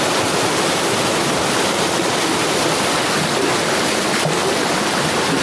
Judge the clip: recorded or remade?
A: recorded